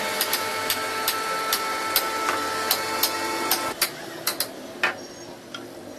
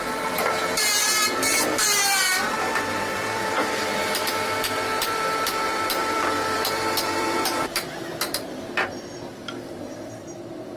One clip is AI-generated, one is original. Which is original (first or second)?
first